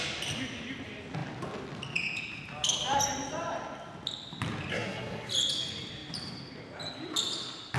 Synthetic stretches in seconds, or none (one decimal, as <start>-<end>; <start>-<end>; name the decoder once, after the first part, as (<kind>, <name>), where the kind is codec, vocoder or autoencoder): 4.7-5.3 (codec, SNAC)